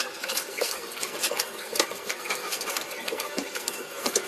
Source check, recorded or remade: remade